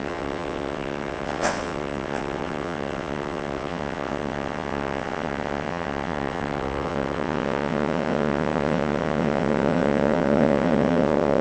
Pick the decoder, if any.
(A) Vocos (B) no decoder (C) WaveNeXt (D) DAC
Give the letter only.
C